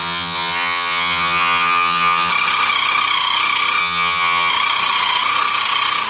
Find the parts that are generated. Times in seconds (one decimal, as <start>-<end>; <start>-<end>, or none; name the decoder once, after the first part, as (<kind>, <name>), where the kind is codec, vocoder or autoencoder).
0.0-2.3 (vocoder, HiFi-GAN); 3.8-4.5